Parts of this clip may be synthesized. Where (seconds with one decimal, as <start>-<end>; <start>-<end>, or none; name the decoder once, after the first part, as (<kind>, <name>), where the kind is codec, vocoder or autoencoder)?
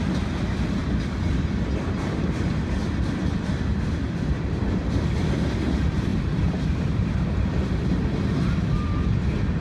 2.8-4.7 (vocoder, BigVGAN v2); 6.1-9.6